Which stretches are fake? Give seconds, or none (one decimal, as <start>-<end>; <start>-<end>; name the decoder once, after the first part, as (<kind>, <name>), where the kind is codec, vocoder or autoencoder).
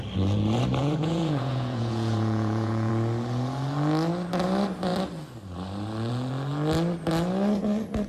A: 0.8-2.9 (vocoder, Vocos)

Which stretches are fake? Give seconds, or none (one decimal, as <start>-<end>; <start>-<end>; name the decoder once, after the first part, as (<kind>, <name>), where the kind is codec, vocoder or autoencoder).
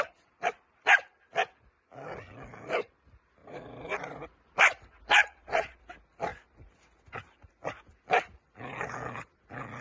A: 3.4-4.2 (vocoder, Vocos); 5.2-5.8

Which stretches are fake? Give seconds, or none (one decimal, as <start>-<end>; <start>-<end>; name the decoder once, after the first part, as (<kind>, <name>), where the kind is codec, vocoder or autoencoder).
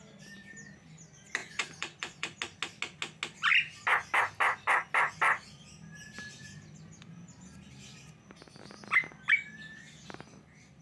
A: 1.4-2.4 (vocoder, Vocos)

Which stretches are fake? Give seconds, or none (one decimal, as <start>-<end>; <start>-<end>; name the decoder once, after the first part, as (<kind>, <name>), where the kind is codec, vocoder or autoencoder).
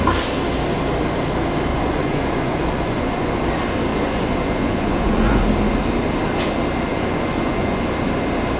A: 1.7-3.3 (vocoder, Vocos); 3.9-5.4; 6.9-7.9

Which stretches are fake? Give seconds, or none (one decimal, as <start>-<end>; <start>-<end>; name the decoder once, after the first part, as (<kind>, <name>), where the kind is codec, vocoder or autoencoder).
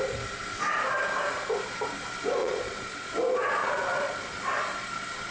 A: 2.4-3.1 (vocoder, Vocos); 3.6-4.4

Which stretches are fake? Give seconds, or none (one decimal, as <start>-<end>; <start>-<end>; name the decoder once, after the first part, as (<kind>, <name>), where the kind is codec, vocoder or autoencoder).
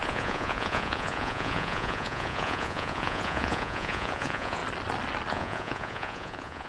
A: 0.0-4.6 (vocoder, Vocos); 5.3-6.7